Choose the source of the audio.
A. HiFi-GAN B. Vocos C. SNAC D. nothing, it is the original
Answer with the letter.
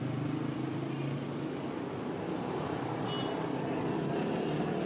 D